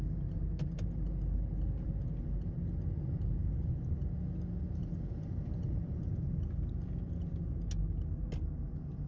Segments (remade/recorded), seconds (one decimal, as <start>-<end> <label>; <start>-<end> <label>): 0.0-3.4 recorded; 3.4-3.9 remade; 3.9-4.8 recorded; 4.8-6.5 remade; 6.5-9.1 recorded